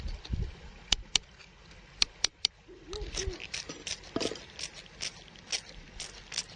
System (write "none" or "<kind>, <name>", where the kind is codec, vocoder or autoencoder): none